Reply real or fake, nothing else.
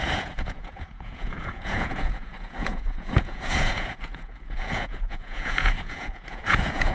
fake